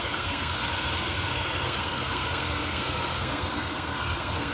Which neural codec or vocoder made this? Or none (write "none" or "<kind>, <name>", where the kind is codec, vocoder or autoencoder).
codec, SNAC